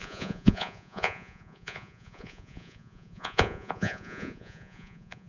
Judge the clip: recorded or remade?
remade